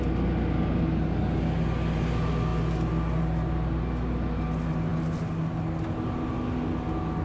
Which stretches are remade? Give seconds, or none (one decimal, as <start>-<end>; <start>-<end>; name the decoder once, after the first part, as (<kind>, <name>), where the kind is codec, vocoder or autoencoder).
none